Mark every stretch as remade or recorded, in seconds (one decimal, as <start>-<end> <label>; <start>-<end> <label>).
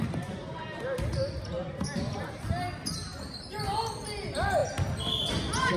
0.0-5.8 recorded